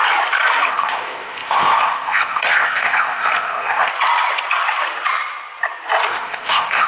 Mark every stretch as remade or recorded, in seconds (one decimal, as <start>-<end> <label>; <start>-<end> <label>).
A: 0.0-0.7 recorded; 0.7-3.9 remade; 3.9-6.1 recorded; 6.1-6.9 remade